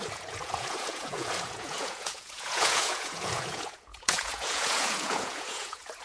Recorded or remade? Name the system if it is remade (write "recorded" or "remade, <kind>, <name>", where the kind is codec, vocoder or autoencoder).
remade, vocoder, Vocos